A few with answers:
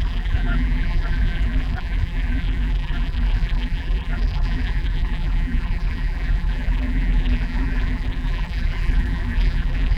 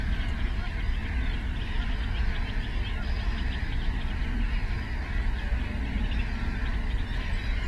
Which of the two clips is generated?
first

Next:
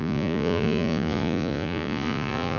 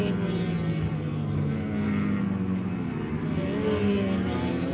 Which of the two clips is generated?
first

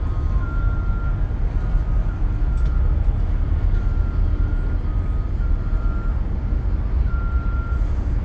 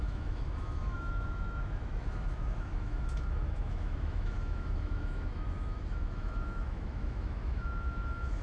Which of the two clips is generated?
second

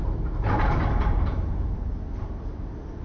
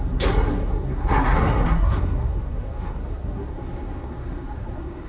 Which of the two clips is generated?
second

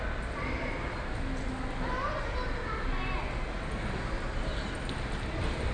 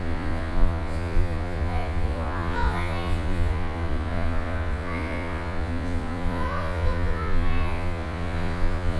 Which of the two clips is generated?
second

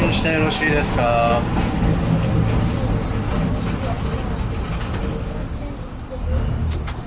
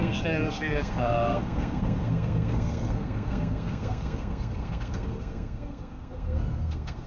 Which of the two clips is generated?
second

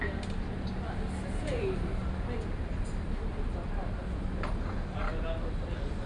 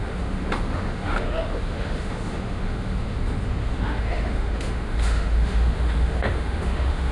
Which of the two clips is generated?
second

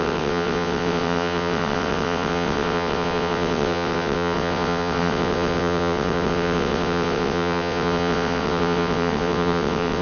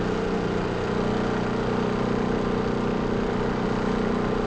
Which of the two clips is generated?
first